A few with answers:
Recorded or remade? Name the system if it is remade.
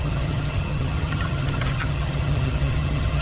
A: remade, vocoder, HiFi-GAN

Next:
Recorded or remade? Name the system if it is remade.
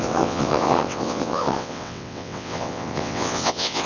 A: remade, vocoder, WaveNeXt